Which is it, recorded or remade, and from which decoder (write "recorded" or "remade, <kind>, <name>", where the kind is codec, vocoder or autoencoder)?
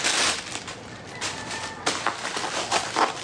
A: recorded